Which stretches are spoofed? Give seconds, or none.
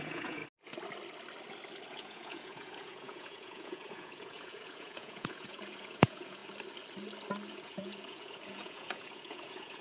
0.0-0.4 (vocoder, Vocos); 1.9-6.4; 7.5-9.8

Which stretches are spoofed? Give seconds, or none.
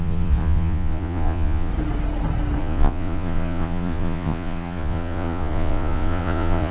0.0-1.7 (vocoder, Vocos); 2.6-6.7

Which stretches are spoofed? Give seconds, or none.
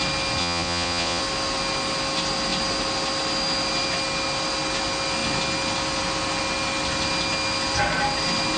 0.4-1.2 (vocoder, Vocos)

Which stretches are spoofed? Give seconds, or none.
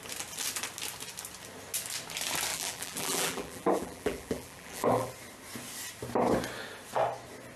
2.5-5.1 (vocoder, BigVGAN v2)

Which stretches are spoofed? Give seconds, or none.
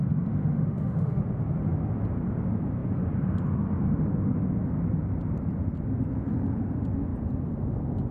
0.4-1.2 (autoencoder, DAC-VAE)